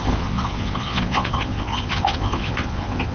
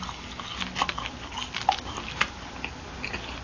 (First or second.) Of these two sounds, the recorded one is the second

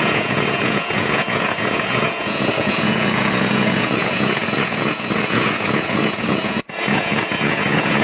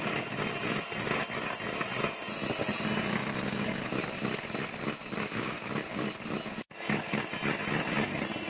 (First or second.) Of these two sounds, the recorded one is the second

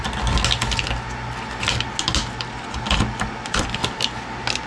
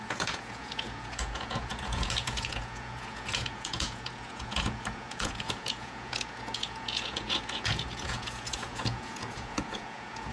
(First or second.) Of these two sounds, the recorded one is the first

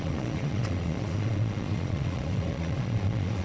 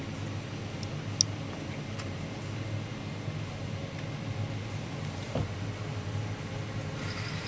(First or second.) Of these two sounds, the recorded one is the second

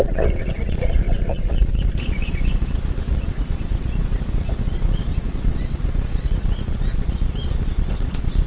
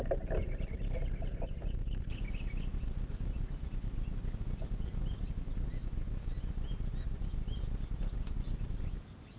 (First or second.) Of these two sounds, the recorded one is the second